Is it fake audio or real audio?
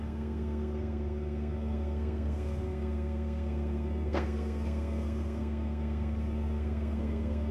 fake